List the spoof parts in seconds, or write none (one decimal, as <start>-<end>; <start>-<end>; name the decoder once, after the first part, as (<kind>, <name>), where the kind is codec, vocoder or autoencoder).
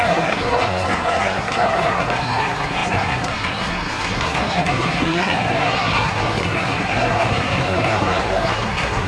0.0-9.1 (codec, SNAC)